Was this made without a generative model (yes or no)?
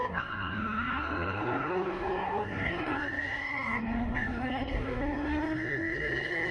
no